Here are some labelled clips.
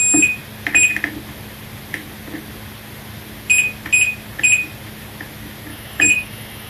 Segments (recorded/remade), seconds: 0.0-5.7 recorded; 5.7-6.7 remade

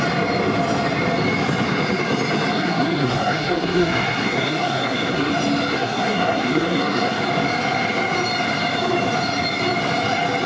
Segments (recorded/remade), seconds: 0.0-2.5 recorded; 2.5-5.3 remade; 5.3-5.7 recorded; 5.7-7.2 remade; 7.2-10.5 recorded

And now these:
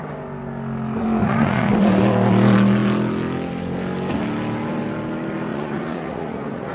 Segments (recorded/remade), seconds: 0.0-1.2 recorded; 1.2-1.7 remade; 1.7-5.5 recorded; 5.5-6.7 remade